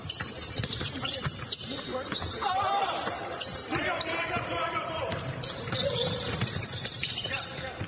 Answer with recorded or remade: remade